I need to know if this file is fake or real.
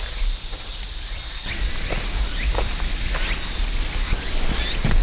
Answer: real